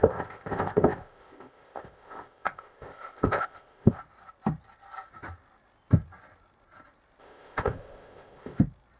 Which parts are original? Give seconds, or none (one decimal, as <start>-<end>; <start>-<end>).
4.0-7.2; 8.6-9.0